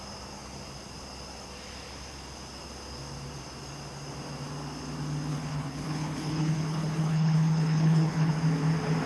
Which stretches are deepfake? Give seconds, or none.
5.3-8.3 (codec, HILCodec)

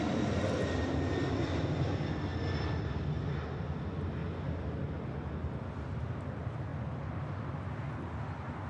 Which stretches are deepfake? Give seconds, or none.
none

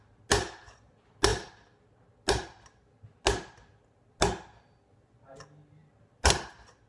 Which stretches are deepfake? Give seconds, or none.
none